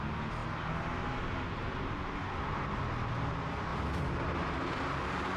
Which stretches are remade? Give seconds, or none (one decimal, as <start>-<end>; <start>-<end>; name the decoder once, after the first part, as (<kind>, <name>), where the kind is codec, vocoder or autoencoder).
none